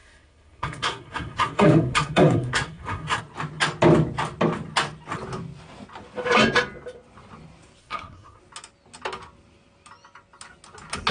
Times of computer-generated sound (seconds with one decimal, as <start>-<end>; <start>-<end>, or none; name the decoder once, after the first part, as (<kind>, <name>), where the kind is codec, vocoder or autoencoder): 0.0-3.2 (codec, SNAC); 7.8-8.4